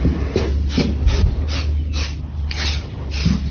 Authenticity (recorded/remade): recorded